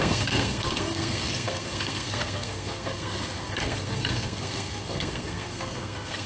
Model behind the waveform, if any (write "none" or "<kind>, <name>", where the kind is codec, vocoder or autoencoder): codec, SNAC